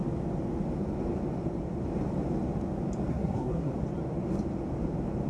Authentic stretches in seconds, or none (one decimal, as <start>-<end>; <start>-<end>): 0.0-3.1; 3.7-5.3